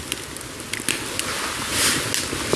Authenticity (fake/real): real